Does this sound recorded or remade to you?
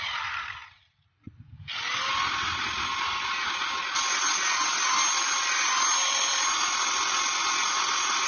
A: recorded